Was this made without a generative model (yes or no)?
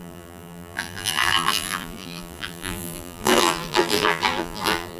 no